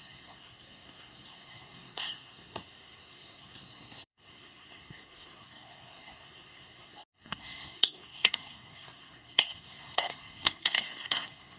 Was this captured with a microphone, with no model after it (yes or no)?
no